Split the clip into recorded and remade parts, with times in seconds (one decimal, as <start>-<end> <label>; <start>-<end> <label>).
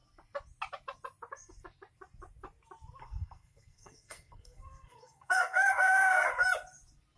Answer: 0.0-3.0 recorded; 3.0-6.3 remade; 6.3-7.2 recorded